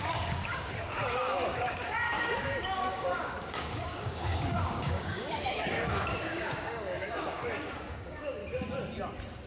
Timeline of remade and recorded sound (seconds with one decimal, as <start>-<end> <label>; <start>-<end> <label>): 0.0-8.4 remade; 8.4-9.5 recorded